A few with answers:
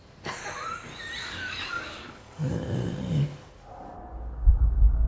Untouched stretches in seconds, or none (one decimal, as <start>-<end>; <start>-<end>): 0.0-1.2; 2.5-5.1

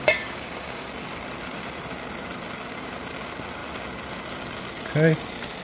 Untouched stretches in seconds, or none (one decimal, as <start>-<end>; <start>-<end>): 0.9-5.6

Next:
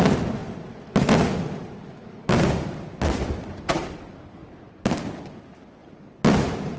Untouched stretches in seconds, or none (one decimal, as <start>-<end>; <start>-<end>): 0.0-6.8